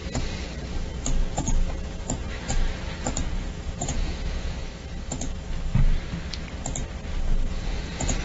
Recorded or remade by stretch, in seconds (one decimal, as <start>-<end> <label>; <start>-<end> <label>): 0.0-3.3 recorded; 3.3-4.6 remade; 4.6-7.5 recorded; 7.5-8.2 remade

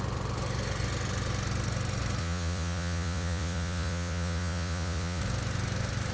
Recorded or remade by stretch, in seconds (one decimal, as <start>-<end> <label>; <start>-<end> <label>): 0.0-2.2 recorded; 2.2-5.2 remade; 5.2-6.1 recorded

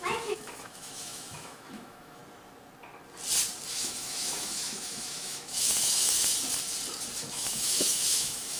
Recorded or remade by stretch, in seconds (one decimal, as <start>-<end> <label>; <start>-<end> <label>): 0.0-2.2 remade; 2.2-3.7 recorded; 3.7-6.3 remade; 6.3-7.2 recorded; 7.2-8.6 remade